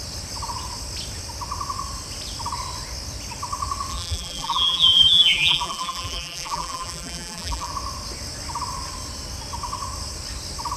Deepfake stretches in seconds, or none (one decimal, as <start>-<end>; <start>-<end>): 3.9-7.7